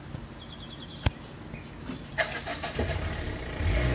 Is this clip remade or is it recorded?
recorded